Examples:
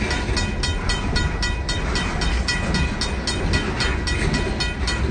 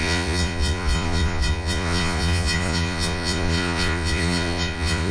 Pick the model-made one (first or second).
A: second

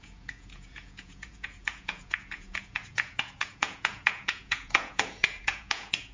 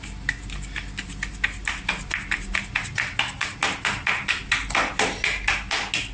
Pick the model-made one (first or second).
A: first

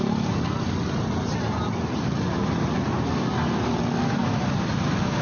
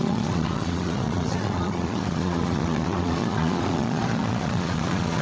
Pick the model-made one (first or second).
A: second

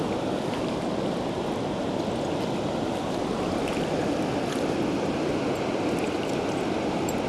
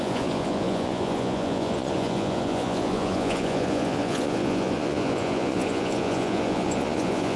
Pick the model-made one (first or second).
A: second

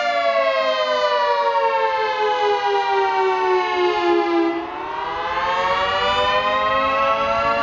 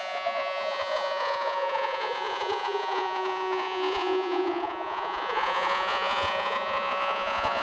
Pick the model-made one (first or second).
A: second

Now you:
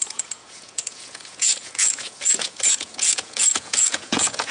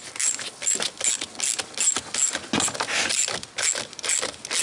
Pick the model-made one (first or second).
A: first